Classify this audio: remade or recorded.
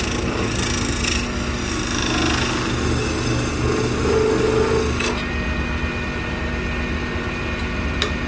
recorded